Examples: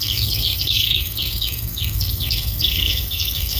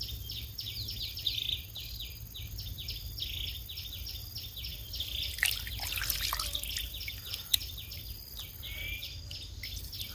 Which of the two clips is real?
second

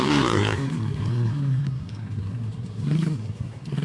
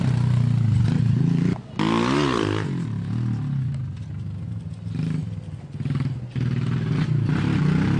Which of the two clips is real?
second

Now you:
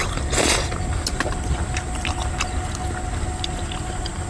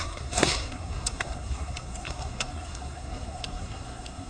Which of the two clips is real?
first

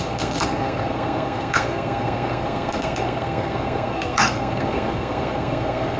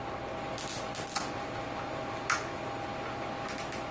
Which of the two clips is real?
second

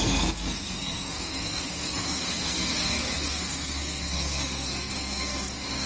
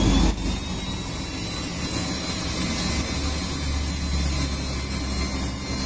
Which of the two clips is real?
second